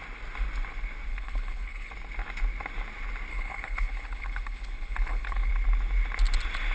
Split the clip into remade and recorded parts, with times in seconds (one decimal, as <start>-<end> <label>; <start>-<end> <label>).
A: 0.0-1.1 recorded; 1.1-1.9 remade; 1.9-3.3 recorded; 3.3-5.5 remade; 5.5-6.7 recorded